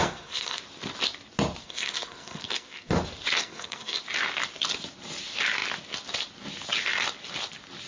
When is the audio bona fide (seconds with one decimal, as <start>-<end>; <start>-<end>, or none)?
0.6-1.6; 3.0-3.4; 4.0-7.9